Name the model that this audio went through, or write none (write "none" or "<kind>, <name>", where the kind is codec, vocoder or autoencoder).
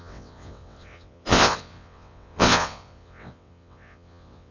vocoder, WaveNeXt